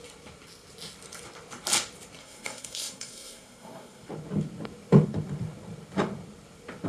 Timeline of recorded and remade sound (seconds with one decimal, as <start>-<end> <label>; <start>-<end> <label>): 0.0-2.2 recorded; 2.2-4.1 remade; 4.1-6.9 recorded